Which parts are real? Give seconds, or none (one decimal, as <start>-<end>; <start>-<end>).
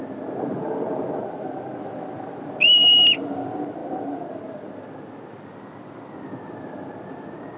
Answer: 0.0-7.6